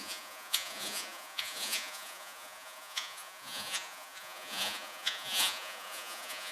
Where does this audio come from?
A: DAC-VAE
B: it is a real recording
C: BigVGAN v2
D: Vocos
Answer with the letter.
D